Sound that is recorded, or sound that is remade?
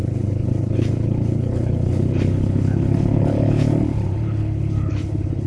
remade